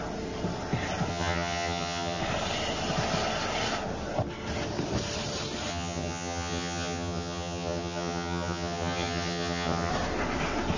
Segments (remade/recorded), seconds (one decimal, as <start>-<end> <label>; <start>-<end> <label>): 0.0-1.1 recorded; 1.1-2.2 remade; 2.2-5.7 recorded; 5.7-9.9 remade; 9.9-10.8 recorded